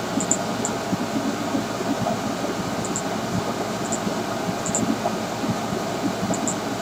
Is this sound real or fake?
real